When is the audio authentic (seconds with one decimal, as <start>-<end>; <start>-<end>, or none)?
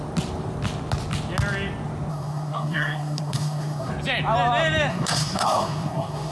0.0-2.1; 3.9-4.9